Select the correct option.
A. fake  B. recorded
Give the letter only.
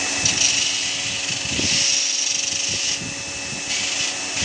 B